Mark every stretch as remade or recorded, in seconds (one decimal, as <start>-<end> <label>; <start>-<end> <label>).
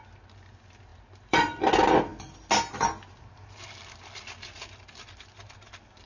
0.0-0.9 recorded; 0.9-1.6 remade; 1.6-6.1 recorded